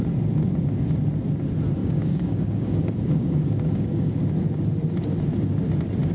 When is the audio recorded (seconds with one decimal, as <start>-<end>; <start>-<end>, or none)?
0.0-1.8; 4.2-6.1